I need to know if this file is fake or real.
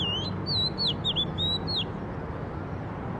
real